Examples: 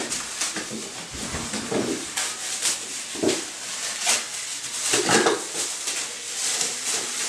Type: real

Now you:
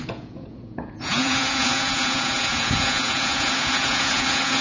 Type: fake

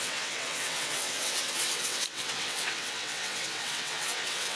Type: fake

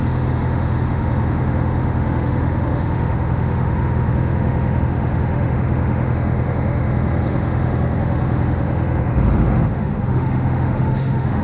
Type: fake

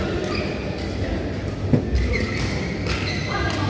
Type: real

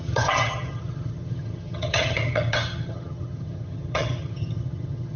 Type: fake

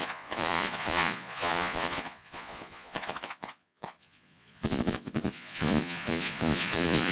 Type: fake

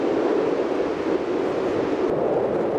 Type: real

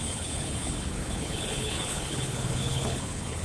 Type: fake